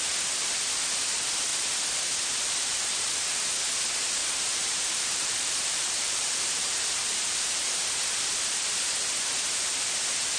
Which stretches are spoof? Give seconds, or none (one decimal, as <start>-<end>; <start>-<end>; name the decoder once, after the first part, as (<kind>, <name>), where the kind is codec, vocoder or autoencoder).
4.2-7.9 (vocoder, BigVGAN v2)